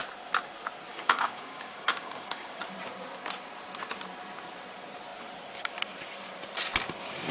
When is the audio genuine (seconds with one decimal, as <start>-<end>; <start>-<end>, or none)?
0.0-0.9; 2.6-7.3